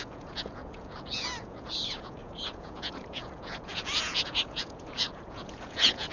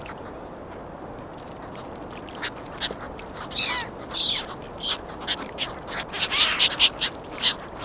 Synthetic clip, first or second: first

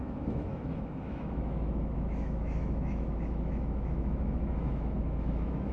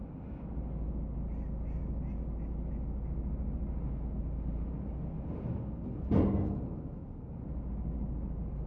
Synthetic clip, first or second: first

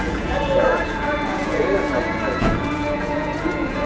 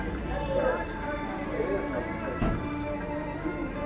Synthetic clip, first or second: first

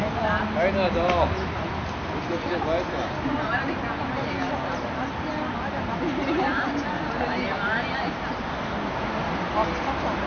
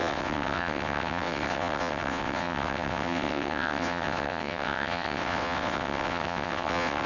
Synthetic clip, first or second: second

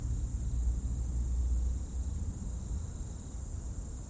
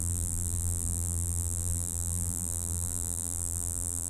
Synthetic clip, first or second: second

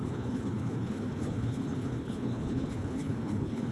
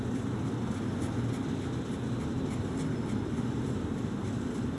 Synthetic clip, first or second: first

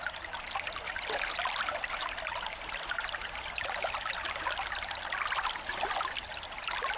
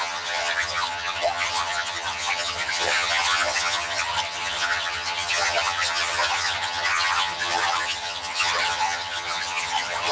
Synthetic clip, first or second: second